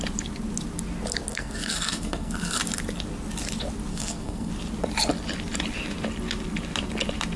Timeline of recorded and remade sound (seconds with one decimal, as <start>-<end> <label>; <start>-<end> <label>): 0.0-1.3 recorded; 1.3-2.6 remade; 2.6-3.9 recorded; 3.9-4.5 remade; 4.5-7.4 recorded